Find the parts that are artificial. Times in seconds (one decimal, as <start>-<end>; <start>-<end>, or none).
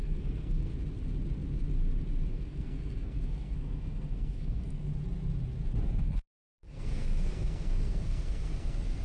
0.0-0.7; 2.3-4.9; 6.0-9.0